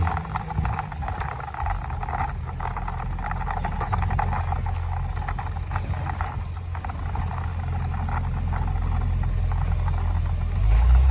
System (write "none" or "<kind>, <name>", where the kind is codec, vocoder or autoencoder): none